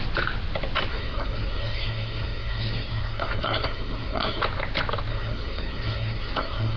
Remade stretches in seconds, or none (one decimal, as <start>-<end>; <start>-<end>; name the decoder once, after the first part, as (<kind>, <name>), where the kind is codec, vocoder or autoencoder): 0.9-4.4 (codec, SNAC); 5.1-6.8